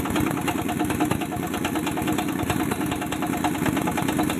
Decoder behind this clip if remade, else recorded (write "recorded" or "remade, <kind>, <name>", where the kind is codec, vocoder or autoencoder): recorded